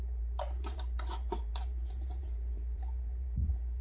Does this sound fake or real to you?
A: fake